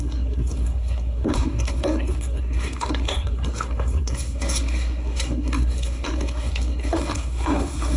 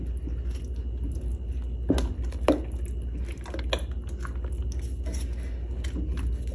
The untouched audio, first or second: second